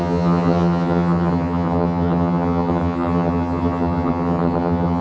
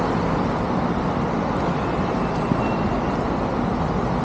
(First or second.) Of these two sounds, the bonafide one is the second